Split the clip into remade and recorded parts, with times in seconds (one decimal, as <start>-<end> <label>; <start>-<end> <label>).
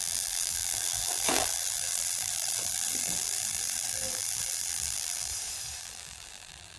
0.0-5.3 remade; 5.3-5.8 recorded; 5.8-6.8 remade